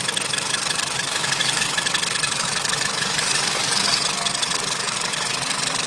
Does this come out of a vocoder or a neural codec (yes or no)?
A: yes